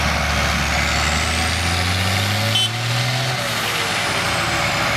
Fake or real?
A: real